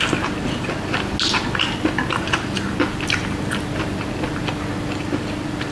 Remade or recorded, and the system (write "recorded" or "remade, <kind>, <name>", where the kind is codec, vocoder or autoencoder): recorded